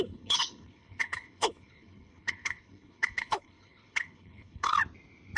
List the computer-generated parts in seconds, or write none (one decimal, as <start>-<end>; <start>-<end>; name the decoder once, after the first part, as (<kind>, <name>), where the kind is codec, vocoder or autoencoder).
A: 0.0-4.8 (codec, HILCodec)